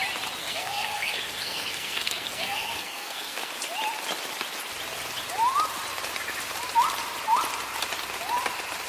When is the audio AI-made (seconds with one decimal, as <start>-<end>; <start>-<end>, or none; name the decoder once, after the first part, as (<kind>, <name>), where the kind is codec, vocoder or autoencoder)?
0.4-3.5 (codec, SNAC)